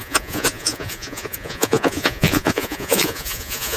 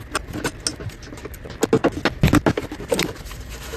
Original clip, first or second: second